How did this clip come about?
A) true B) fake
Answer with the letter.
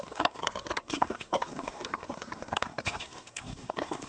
B